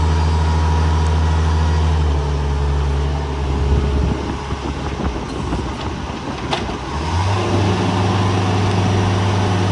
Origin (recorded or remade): recorded